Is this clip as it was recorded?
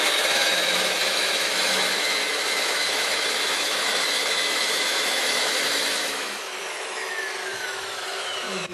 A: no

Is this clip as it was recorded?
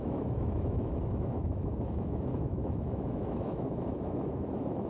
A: no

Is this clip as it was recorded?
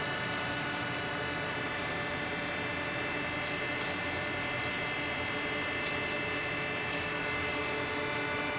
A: yes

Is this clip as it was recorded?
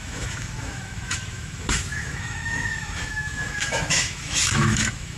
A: no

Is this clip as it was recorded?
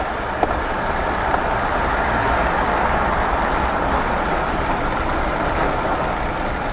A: yes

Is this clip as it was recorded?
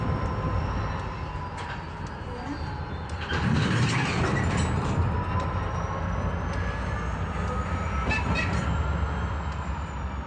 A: yes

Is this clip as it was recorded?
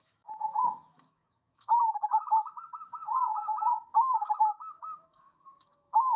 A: no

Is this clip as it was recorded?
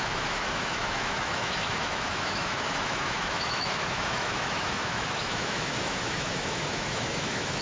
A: no